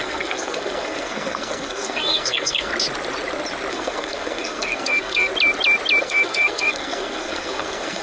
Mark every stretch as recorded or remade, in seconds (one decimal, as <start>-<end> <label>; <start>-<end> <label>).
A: 0.0-2.7 remade; 2.7-3.7 recorded; 3.7-5.3 remade; 5.3-6.0 recorded; 6.0-8.0 remade